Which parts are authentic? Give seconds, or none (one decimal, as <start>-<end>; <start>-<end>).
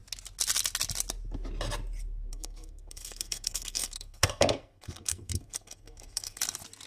0.0-2.3; 6.4-6.9